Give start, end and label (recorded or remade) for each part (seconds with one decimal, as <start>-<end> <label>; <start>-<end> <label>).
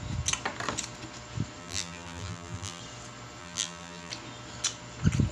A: 0.0-1.6 recorded; 1.6-2.8 remade; 2.8-3.4 recorded; 3.4-4.1 remade; 4.1-5.3 recorded